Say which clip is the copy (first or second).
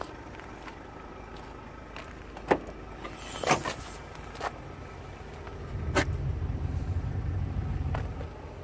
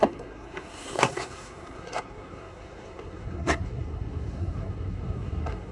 second